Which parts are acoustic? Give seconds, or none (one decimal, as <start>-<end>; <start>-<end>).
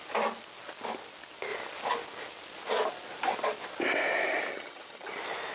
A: 0.0-4.5; 5.1-5.5